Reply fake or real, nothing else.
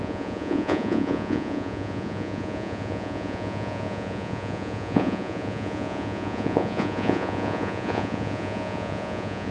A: fake